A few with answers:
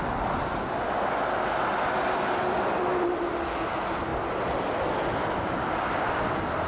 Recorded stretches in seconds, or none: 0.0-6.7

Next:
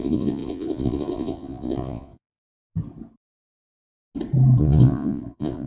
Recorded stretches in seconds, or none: 2.4-4.6

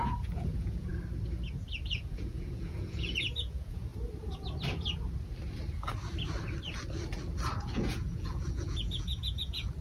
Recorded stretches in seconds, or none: 0.9-2.0; 3.9-7.6

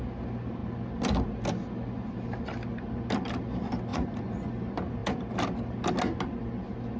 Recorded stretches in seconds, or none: 0.0-3.9; 4.5-7.0

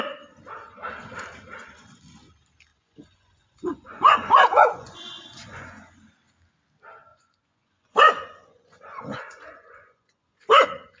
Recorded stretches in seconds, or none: 0.0-2.7; 5.8-7.1; 10.5-11.0

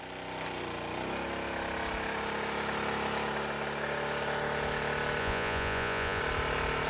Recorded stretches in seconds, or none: 0.0-5.2; 6.2-6.9

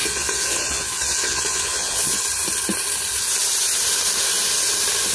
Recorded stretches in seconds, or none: 2.2-5.1

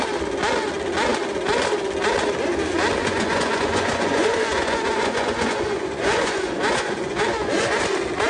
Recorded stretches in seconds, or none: 0.0-3.0; 7.8-8.3